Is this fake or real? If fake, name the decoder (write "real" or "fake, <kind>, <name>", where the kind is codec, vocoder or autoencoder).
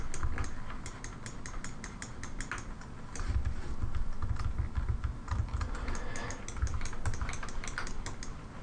real